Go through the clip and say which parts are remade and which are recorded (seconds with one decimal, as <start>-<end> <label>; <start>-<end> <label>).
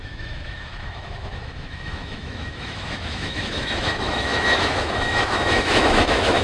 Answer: 0.0-6.4 remade